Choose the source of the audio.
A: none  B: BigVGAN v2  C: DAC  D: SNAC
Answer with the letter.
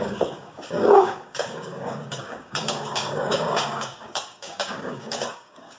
C